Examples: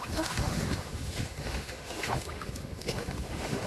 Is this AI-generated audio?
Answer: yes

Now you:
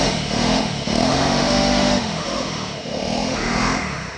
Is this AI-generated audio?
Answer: yes